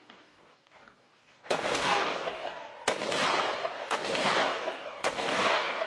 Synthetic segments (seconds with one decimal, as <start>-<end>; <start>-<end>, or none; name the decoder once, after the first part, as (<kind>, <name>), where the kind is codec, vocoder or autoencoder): 0.0-2.7 (codec, DAC); 3.7-5.9